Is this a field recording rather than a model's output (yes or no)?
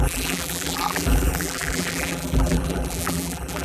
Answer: no